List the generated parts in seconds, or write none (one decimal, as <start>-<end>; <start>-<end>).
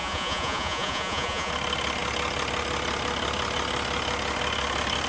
0.0-1.5